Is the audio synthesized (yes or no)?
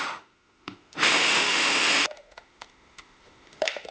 yes